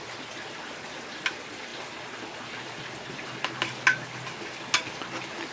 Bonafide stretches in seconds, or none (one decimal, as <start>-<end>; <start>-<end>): 0.0-5.5